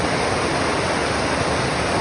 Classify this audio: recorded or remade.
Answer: recorded